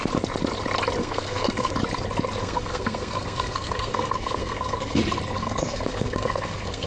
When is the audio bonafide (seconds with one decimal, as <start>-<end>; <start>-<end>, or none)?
0.0-1.0; 1.7-2.4; 5.0-5.4